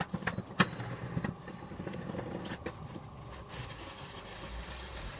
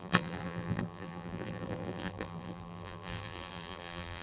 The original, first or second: first